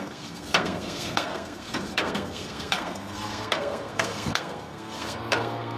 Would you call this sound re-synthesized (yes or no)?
yes